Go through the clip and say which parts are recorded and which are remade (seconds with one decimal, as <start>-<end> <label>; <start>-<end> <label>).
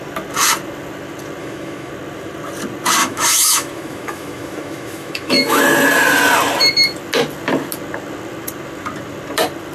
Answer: 0.0-1.4 recorded; 1.4-1.9 remade; 1.9-3.0 recorded; 3.0-5.6 remade; 5.6-9.7 recorded